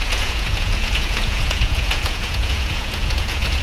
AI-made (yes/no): yes